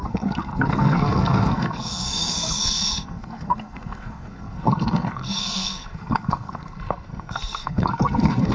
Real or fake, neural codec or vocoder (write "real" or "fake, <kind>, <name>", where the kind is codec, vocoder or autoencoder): fake, codec, SNAC